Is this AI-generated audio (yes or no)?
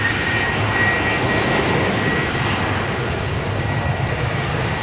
no